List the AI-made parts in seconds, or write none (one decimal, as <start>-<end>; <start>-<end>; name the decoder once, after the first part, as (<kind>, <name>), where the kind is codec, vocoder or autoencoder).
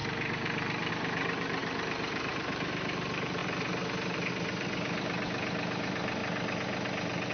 0.0-6.2 (vocoder, BigVGAN v2)